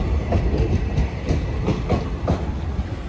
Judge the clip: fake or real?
real